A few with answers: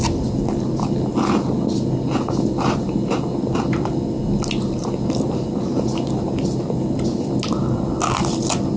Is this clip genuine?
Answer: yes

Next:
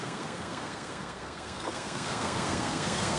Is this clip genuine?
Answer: no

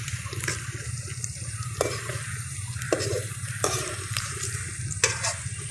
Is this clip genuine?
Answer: no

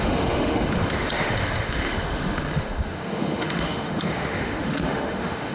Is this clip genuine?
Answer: no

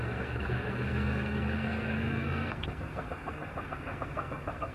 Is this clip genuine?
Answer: no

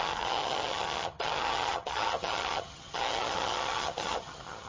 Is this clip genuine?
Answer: no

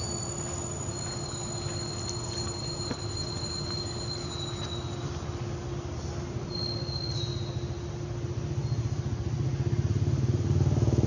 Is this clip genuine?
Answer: yes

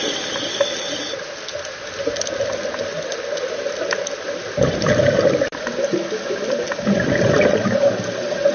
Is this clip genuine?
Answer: yes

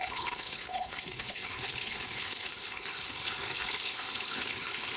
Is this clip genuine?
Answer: no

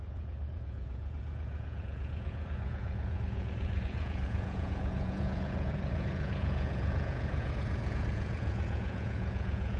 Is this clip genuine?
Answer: no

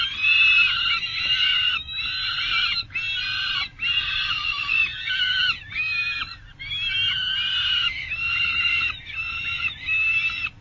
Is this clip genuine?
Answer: yes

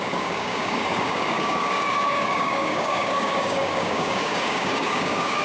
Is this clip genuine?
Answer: no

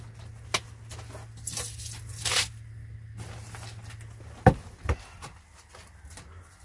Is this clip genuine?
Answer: yes